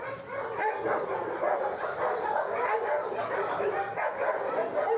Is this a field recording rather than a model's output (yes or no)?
yes